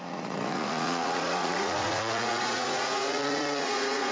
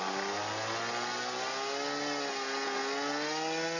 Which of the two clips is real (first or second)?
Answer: second